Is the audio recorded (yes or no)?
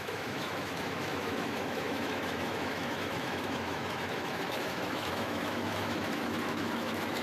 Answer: no